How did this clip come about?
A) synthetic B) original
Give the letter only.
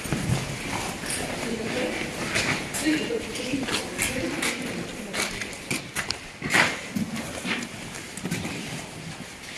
B